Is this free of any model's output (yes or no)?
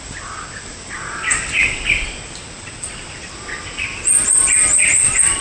yes